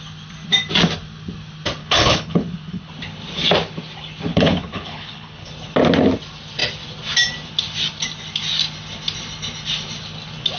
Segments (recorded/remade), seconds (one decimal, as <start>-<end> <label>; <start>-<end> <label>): 0.0-1.8 recorded; 1.8-2.9 remade; 2.9-4.3 recorded; 4.3-5.5 remade; 5.5-10.6 recorded